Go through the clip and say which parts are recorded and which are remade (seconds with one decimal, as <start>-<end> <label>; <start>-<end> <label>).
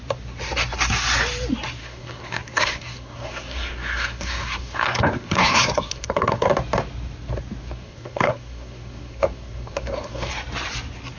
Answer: 0.0-1.8 recorded; 1.8-6.5 remade; 6.5-7.6 recorded; 7.6-10.3 remade; 10.3-11.2 recorded